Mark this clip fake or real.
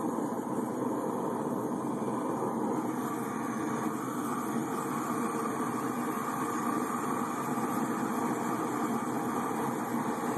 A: real